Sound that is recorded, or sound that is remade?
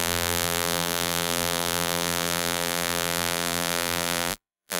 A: remade